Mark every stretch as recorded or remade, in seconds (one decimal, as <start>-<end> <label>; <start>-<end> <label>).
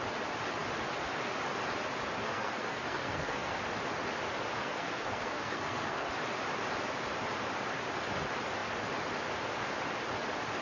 0.0-2.2 recorded; 2.2-3.6 remade; 3.6-4.6 recorded; 4.6-6.1 remade; 6.1-10.6 recorded